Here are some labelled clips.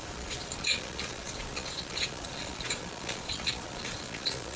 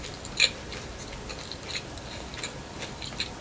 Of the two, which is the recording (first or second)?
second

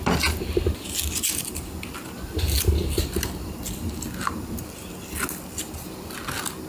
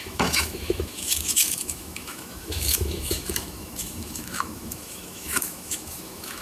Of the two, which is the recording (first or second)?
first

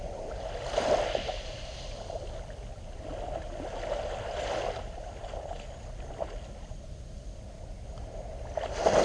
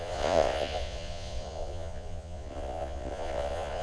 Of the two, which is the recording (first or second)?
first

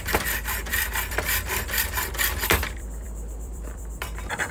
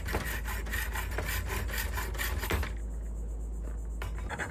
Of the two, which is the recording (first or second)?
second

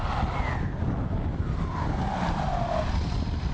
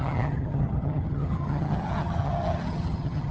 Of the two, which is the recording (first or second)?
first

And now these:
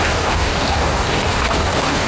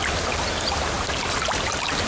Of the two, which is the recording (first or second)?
second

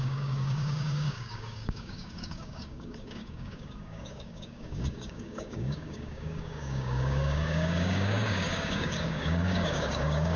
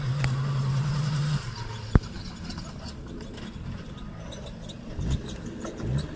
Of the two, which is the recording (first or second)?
second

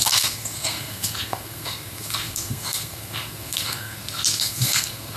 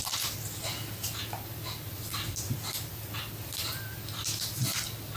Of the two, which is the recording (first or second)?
second